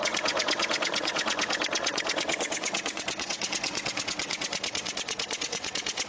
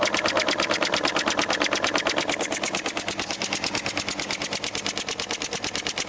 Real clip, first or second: second